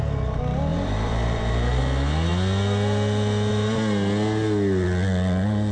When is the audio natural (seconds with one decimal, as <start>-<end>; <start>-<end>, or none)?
0.0-0.7; 1.8-5.7